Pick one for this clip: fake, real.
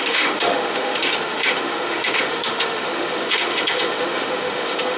fake